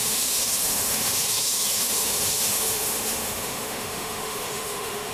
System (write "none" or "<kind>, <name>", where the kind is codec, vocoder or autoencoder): autoencoder, DAC-VAE